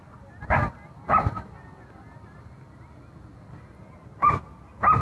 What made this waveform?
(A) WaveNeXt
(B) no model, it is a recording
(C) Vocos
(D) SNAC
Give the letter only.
B